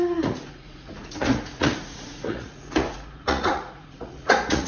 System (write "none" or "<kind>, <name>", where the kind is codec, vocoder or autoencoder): vocoder, Vocos